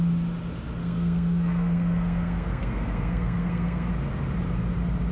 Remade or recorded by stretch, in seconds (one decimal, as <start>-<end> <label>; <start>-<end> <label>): 0.0-0.8 recorded; 0.8-3.9 remade; 3.9-5.1 recorded